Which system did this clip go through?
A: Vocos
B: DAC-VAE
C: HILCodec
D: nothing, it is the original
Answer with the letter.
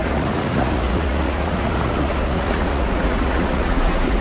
A